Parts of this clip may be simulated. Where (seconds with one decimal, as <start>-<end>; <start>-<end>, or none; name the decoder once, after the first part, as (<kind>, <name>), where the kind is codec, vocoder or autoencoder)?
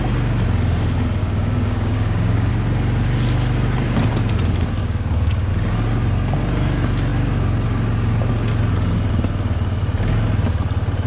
1.2-2.5 (codec, DAC); 4.8-5.5